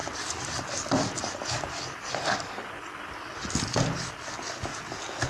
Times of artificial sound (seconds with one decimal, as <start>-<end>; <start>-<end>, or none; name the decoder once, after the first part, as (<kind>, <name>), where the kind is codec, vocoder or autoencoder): 0.0-3.1 (vocoder, BigVGAN v2); 4.7-5.3